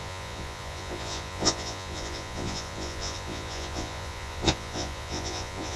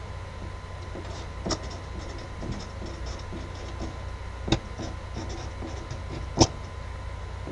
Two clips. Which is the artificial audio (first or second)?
first